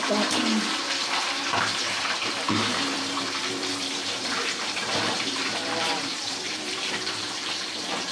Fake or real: fake